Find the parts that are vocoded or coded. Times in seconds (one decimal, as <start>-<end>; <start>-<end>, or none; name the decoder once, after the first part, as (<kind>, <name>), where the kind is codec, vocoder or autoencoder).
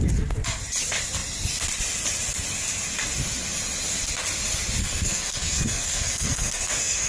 4.8-7.1 (codec, SNAC)